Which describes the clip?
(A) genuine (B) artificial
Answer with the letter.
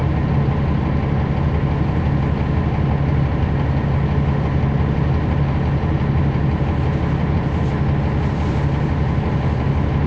A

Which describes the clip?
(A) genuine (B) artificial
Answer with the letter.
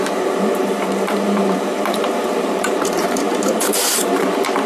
B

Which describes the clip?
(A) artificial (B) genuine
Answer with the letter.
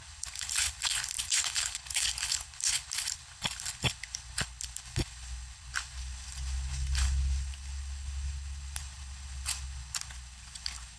A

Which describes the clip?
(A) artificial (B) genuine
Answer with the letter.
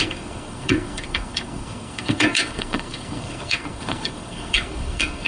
A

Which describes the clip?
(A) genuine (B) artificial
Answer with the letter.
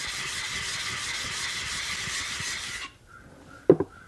A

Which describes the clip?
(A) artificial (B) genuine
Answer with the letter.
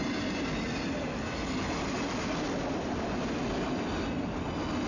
B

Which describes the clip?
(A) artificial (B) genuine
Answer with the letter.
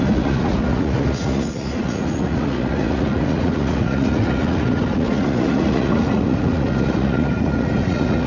A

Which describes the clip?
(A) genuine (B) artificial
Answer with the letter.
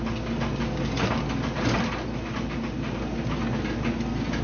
A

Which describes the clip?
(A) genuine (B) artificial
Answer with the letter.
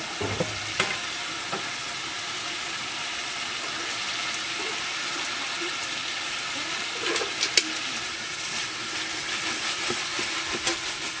A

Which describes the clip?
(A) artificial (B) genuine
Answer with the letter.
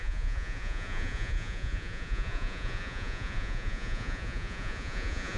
A